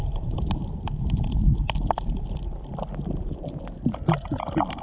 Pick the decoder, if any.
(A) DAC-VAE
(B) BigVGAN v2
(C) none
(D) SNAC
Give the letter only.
C